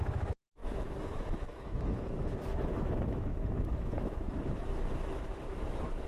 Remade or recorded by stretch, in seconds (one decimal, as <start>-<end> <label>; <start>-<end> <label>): 0.0-6.1 remade